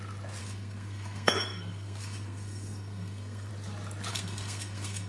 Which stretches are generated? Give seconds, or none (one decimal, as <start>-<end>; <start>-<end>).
0.4-3.5; 4.1-5.1